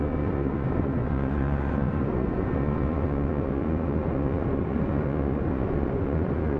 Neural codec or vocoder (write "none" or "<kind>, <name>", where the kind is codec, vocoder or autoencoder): vocoder, Vocos